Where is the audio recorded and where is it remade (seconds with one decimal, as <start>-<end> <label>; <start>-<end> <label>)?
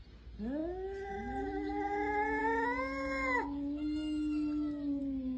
0.0-5.4 recorded